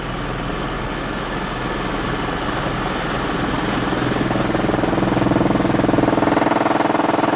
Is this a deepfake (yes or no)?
no